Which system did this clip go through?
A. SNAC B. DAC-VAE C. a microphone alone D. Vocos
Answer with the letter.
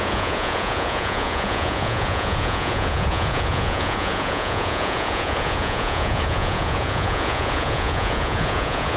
D